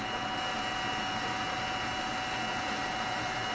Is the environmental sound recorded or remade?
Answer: recorded